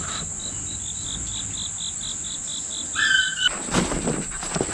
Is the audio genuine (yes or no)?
yes